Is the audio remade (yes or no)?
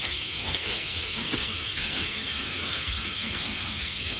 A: yes